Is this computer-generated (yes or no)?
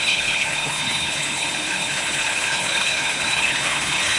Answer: yes